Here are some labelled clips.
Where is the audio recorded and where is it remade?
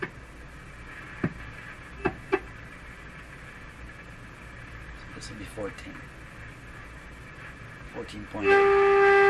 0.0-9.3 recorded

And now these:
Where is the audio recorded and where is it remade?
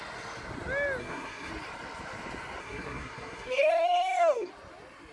0.0-1.0 recorded; 1.0-1.5 remade; 1.5-2.6 recorded; 2.6-4.5 remade; 4.5-5.1 recorded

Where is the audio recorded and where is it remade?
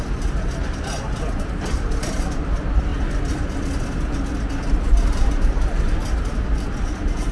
0.0-7.3 recorded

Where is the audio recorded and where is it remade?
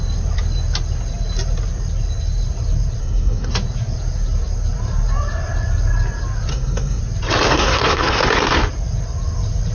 0.0-3.0 recorded; 3.0-3.5 remade; 3.5-6.5 recorded; 6.5-7.0 remade; 7.0-7.5 recorded; 7.5-8.2 remade; 8.2-9.7 recorded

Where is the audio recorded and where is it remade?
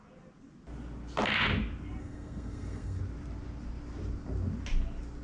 0.0-2.0 recorded; 2.0-3.0 remade; 3.0-5.2 recorded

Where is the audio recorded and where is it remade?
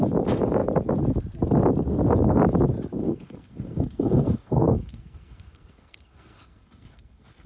0.0-3.0 recorded; 3.0-7.5 remade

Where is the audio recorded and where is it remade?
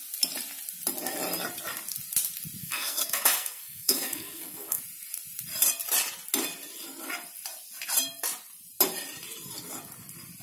0.0-2.6 recorded; 2.6-4.8 remade; 4.8-10.4 recorded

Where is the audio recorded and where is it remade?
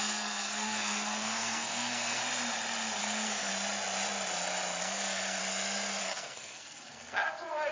0.0-2.2 remade; 2.2-3.0 recorded; 3.0-3.5 remade; 3.5-4.8 recorded; 4.8-5.4 remade; 5.4-6.0 recorded; 6.0-7.7 remade